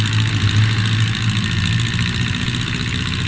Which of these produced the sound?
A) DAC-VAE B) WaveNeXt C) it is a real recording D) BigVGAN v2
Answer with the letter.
C